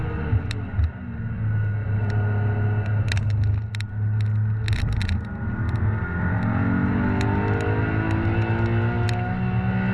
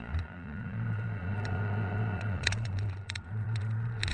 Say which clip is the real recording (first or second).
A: first